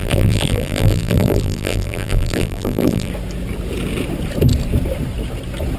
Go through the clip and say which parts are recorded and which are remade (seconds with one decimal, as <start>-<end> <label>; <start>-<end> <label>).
0.0-3.1 remade; 3.1-5.8 recorded